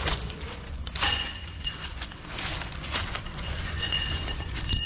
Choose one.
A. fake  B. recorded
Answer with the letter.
A